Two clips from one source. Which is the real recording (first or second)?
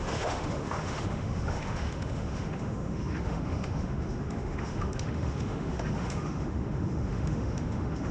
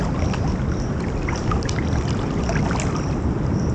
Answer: second